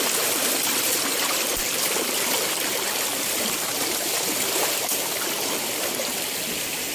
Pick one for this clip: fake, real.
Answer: real